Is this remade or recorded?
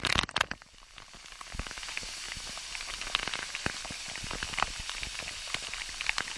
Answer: recorded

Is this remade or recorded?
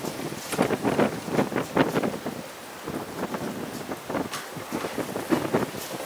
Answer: recorded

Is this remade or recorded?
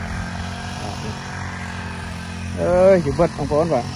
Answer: recorded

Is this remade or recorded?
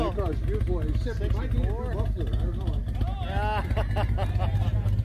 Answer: recorded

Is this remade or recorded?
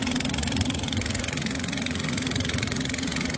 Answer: remade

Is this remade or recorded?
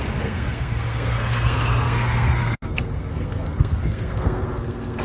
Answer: remade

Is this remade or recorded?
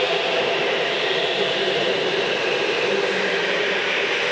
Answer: remade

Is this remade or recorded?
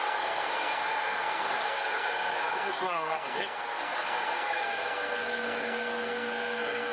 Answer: remade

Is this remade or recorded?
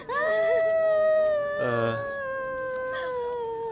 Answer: recorded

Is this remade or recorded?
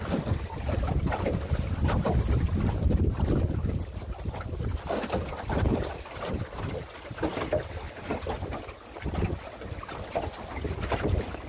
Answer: recorded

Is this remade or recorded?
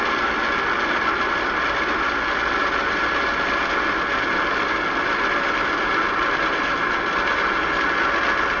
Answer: recorded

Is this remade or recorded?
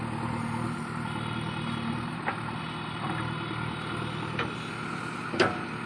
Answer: recorded